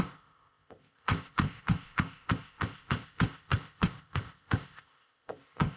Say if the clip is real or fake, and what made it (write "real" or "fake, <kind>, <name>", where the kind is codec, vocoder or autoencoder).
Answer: fake, codec, ZipCodec